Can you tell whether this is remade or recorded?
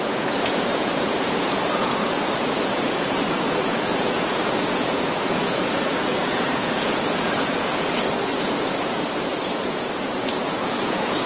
remade